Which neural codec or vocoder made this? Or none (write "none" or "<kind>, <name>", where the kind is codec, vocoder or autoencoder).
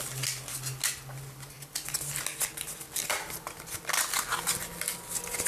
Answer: none